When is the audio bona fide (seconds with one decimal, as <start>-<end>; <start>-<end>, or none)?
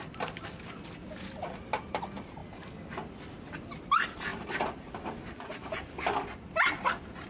0.0-7.3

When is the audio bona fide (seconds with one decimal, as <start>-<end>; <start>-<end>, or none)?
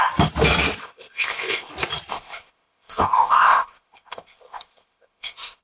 0.0-0.8; 1.7-2.1